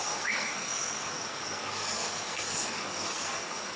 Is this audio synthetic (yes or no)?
yes